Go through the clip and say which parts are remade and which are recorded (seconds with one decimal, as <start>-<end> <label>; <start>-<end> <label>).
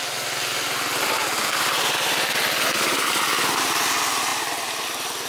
0.0-5.3 recorded